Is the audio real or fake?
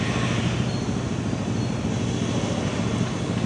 real